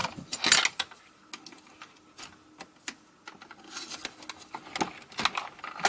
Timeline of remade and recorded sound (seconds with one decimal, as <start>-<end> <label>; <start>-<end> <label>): 0.0-5.9 recorded